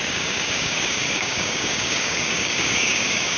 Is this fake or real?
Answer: fake